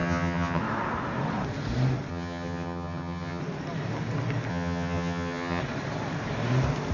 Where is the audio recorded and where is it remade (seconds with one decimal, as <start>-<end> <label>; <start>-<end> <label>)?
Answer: 0.0-0.6 remade; 0.6-2.1 recorded; 2.1-3.4 remade; 3.4-4.5 recorded; 4.5-5.6 remade; 5.6-6.9 recorded